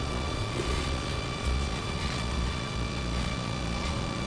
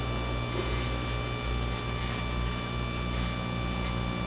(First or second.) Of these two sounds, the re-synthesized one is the first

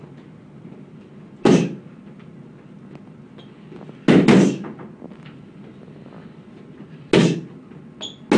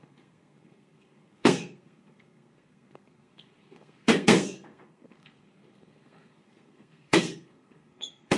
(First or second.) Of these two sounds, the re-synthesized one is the second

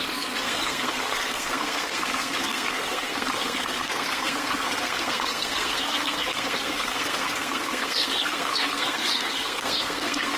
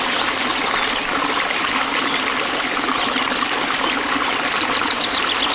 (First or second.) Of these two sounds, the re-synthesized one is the first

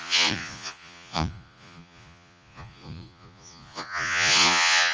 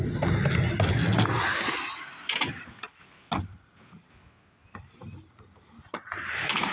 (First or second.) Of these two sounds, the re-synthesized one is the first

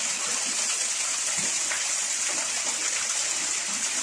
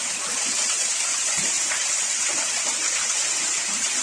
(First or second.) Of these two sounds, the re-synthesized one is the second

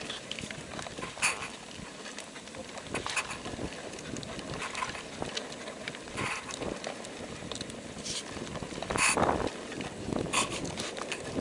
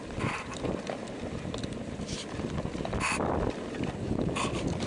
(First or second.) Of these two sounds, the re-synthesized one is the second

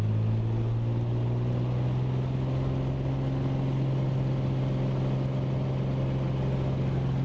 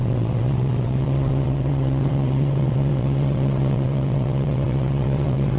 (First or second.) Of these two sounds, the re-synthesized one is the second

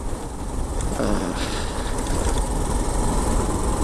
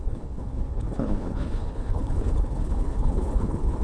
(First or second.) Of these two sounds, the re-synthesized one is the second